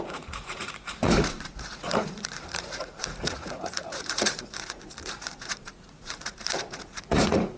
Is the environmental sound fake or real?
fake